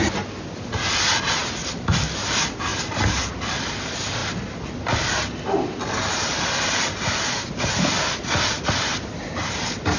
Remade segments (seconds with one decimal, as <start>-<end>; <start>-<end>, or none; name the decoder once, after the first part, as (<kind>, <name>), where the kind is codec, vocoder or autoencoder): none